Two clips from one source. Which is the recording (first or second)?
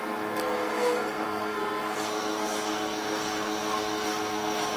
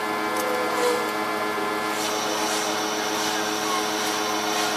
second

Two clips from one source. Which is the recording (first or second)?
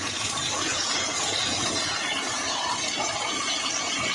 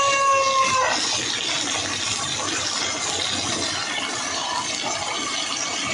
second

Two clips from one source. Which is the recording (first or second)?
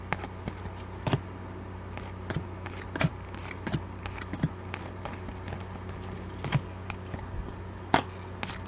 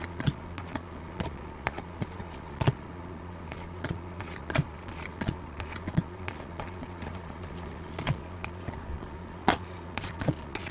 first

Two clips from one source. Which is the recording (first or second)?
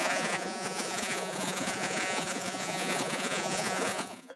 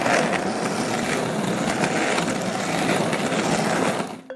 second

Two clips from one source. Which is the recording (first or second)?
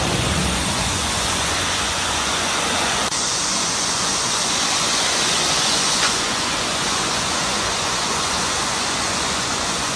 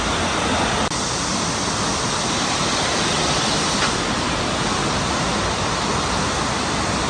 second